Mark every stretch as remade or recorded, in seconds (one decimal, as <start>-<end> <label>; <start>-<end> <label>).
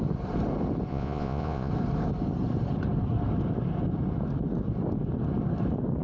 0.0-0.9 recorded; 0.9-1.7 remade; 1.7-6.0 recorded